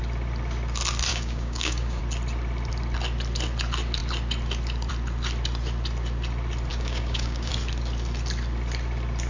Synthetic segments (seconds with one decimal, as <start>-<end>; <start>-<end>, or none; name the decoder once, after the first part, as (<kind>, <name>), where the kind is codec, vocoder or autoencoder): 1.1-2.0 (codec, DAC); 6.7-7.5